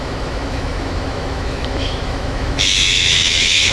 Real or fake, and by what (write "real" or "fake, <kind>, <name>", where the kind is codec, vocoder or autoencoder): fake, autoencoder, DAC-VAE